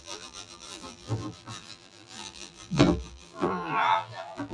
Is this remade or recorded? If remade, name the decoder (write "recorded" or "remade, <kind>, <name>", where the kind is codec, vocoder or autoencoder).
remade, vocoder, BigVGAN v2